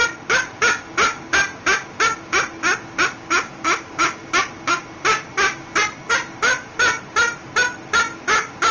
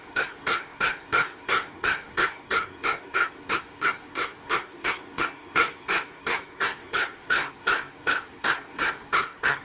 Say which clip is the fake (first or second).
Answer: second